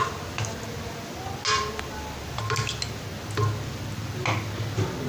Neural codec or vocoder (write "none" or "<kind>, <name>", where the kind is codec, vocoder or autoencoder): none